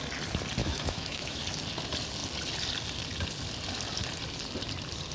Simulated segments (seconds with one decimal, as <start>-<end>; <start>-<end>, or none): 0.6-1.4